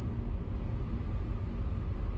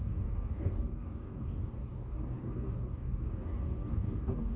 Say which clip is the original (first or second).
first